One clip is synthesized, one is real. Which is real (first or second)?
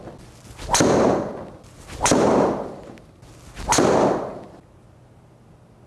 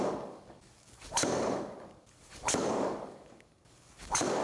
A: first